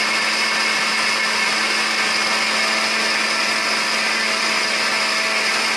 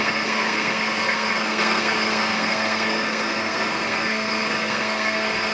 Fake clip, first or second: second